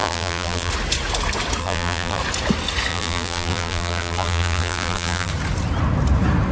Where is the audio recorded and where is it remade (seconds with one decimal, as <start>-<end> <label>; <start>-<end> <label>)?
0.0-0.7 remade; 0.7-1.6 recorded; 1.6-2.2 remade; 2.2-2.9 recorded; 2.9-5.3 remade; 5.3-6.5 recorded